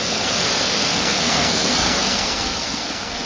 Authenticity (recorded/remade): remade